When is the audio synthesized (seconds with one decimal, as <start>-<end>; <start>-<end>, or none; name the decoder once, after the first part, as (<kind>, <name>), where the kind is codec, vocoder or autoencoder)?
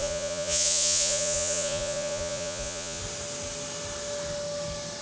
0.0-3.0 (vocoder, Vocos)